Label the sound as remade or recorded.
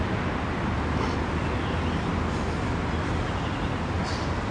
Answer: recorded